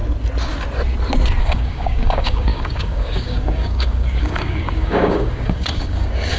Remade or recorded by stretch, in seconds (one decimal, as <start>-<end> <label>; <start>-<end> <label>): 0.0-1.4 recorded; 1.4-6.4 remade